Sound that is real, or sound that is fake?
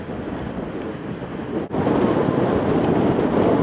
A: real